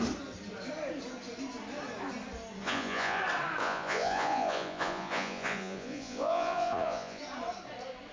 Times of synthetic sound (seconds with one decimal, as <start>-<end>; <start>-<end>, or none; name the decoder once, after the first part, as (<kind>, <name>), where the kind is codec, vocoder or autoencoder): 2.6-3.2 (vocoder, Vocos); 3.6-7.2